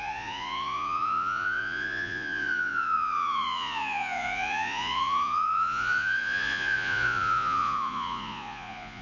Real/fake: fake